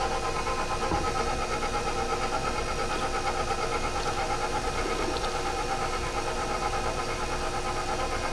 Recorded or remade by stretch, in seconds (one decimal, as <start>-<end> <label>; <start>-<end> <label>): 0.0-4.2 recorded; 4.2-7.2 remade; 7.2-8.3 recorded